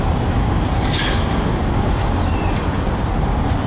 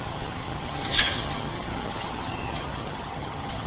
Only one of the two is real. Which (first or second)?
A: first